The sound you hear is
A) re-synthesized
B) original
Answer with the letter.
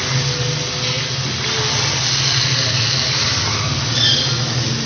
B